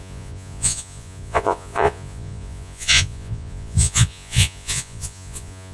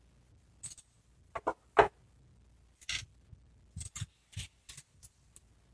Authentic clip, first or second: second